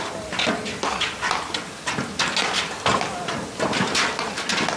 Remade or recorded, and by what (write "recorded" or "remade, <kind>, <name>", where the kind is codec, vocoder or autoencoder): recorded